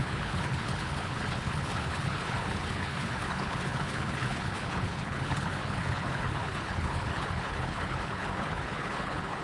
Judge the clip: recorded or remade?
remade